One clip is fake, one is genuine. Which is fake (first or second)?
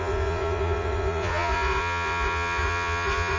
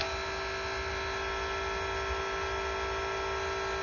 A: first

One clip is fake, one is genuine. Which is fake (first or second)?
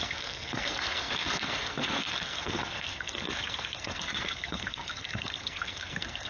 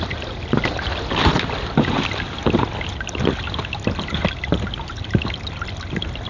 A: first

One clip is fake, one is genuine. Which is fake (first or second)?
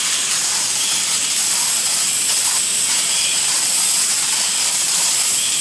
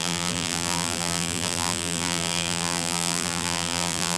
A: second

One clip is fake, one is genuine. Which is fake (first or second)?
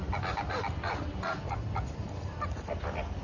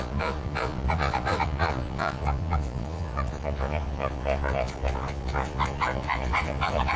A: second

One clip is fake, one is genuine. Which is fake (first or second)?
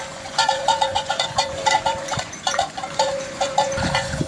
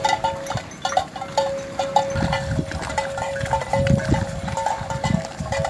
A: first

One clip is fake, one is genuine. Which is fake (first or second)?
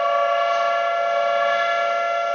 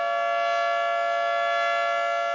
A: first